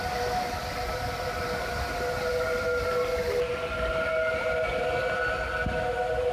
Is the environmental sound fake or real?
real